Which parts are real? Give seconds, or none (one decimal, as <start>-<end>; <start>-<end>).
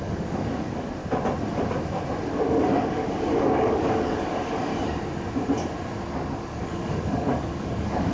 1.0-2.3; 4.7-6.1